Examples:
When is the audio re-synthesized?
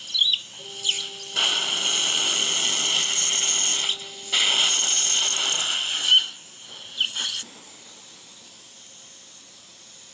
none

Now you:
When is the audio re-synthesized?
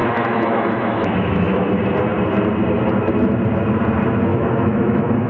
0.0-1.7 (autoencoder, DAC-VAE); 4.3-5.3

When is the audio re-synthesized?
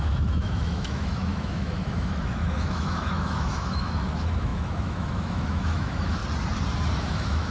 0.0-6.2 (autoencoder, DAC-VAE); 7.0-7.5